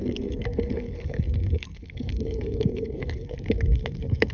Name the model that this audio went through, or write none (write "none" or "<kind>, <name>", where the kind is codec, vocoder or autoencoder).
codec, SNAC